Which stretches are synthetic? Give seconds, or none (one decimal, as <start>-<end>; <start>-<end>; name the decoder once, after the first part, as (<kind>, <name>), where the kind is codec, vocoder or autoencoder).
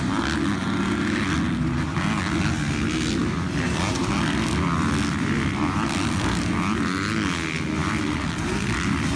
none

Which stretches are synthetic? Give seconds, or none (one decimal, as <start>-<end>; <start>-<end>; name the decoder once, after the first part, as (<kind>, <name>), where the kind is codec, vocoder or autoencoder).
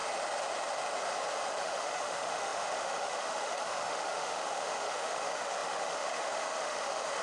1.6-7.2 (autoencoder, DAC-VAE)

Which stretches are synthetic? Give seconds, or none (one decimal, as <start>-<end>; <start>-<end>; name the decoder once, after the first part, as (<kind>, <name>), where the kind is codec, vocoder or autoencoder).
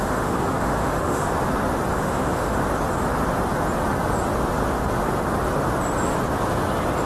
0.0-1.3 (autoencoder, DAC-VAE); 1.9-2.6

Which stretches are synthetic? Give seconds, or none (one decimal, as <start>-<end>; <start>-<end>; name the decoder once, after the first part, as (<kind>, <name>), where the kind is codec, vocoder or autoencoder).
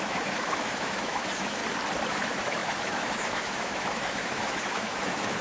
0.0-1.6 (autoencoder, DAC-VAE); 2.1-5.4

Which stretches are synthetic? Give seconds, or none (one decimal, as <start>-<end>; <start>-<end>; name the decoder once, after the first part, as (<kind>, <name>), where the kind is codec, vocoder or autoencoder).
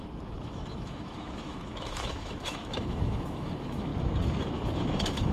0.0-3.9 (autoencoder, DAC-VAE); 4.4-5.3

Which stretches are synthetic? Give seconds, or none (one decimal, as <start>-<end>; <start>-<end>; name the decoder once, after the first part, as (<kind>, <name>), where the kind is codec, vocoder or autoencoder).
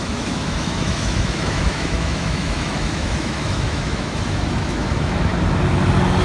0.0-5.3 (autoencoder, DAC-VAE)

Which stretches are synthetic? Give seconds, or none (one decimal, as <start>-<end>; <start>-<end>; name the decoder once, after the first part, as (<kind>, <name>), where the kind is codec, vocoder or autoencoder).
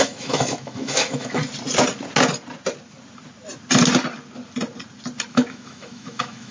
0.0-1.4 (autoencoder, DAC-VAE); 5.3-6.5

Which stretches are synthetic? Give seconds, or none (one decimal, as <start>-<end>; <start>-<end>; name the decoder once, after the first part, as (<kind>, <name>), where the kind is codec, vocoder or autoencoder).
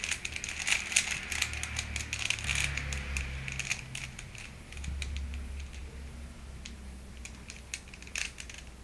none